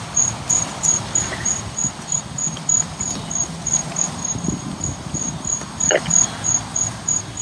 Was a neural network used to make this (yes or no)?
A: no